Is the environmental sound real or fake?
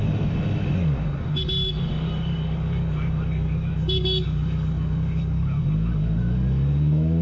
fake